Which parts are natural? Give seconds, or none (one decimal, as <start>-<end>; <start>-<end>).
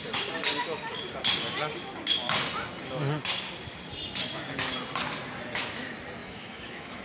0.0-6.2